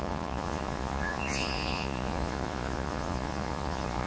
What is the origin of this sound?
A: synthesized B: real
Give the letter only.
A